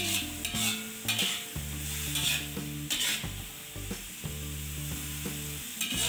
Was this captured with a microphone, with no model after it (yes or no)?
yes